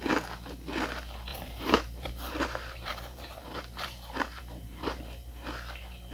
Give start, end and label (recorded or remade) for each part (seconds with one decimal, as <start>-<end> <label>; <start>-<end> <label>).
0.0-1.3 recorded; 1.3-5.0 remade; 5.0-6.1 recorded